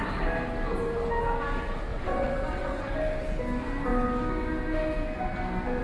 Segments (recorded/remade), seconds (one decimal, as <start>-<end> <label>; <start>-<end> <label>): 0.0-1.9 recorded; 1.9-2.9 remade; 2.9-5.8 recorded